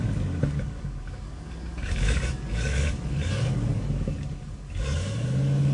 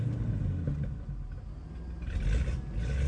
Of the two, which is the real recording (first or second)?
second